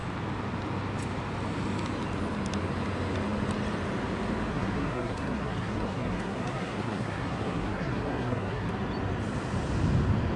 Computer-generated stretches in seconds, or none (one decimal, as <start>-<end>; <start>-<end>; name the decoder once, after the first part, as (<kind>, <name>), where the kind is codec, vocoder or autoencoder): 4.5-8.7 (codec, SNAC)